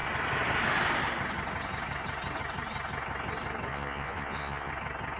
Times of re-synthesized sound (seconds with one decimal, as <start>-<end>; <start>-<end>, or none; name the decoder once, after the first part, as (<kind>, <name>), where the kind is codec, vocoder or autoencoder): 3.7-4.7 (vocoder, Vocos)